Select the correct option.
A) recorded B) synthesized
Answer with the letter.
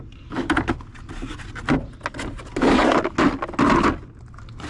A